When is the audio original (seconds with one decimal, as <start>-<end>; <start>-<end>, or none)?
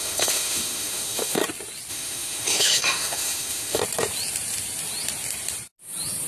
1.4-1.9; 3.8-6.3